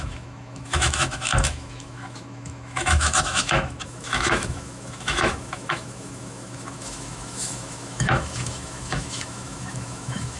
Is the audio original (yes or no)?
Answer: no